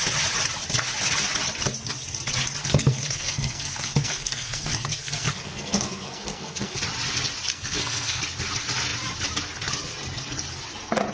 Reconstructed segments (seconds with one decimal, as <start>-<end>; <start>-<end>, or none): 2.6-6.8; 7.5-8.2